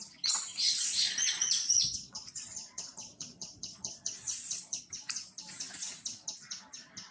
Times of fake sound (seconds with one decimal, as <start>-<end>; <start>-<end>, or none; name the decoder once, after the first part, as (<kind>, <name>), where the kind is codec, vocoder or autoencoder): 0.5-4.8 (vocoder, Vocos)